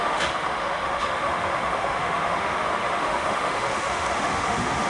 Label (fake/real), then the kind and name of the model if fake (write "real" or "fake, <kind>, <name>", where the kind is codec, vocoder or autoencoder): fake, autoencoder, DAC-VAE